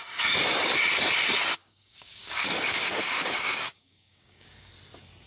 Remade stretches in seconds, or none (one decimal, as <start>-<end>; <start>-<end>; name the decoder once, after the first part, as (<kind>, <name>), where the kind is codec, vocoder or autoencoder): 1.6-4.7 (codec, DAC)